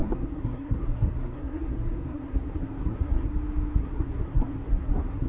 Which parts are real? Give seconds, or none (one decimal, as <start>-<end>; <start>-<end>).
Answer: 3.3-3.8